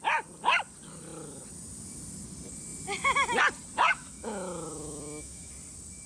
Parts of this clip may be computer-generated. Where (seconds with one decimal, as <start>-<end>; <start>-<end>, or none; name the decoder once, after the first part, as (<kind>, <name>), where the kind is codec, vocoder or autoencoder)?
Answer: 3.9-5.5 (autoencoder, DAC-VAE)